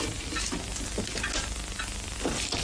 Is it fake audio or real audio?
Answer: real